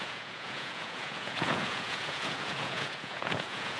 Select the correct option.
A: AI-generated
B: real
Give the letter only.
A